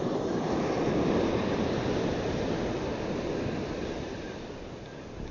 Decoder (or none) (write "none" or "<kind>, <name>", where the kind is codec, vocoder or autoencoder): none